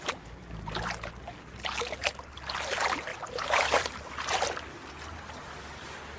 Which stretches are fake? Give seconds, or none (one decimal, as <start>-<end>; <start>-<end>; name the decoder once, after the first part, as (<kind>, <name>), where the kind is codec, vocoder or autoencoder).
3.1-4.4 (vocoder, BigVGAN v2)